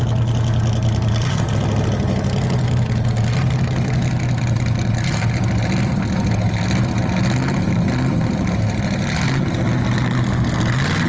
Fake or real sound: real